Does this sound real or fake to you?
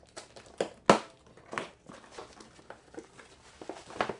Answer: real